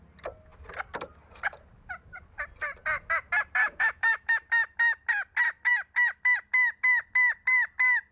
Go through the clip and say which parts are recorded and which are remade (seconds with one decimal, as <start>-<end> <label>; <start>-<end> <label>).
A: 0.0-3.6 recorded; 3.6-4.3 remade; 4.3-8.1 recorded